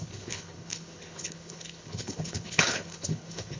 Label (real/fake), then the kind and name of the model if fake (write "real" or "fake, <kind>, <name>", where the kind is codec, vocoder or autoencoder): fake, codec, HILCodec